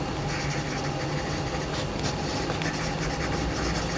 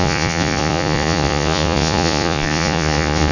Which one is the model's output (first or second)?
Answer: second